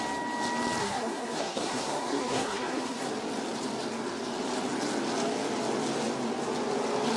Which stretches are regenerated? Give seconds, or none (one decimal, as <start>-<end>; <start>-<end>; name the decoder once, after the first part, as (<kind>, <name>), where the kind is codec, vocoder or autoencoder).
0.8-3.1 (codec, SNAC)